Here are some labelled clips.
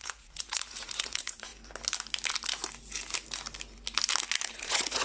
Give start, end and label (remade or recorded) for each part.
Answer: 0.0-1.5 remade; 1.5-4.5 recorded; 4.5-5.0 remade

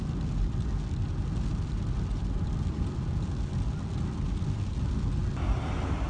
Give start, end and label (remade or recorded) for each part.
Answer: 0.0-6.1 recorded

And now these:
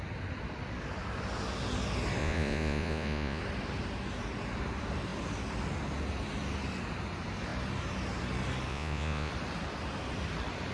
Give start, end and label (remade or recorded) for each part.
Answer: 0.0-2.2 recorded; 2.2-3.4 remade; 3.4-8.7 recorded; 8.7-9.3 remade; 9.3-10.7 recorded

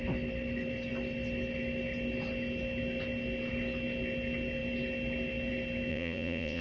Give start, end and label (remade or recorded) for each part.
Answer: 0.0-5.9 recorded; 5.9-6.6 remade

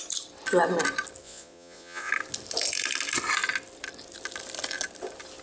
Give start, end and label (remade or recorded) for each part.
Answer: 0.0-1.2 recorded; 1.2-2.1 remade; 2.1-5.4 recorded